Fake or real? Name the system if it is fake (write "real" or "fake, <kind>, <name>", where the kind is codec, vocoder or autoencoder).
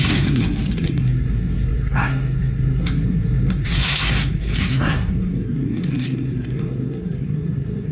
fake, codec, SNAC